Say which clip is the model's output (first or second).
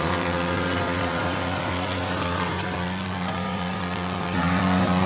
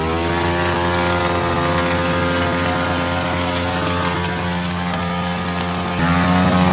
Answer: first